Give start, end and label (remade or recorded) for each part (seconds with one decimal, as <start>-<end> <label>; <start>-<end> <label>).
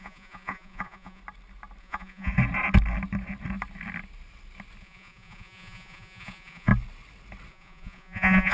0.0-1.2 remade; 1.2-1.8 recorded; 1.8-2.3 remade; 2.3-4.8 recorded; 4.8-6.7 remade; 6.7-7.5 recorded; 7.5-8.5 remade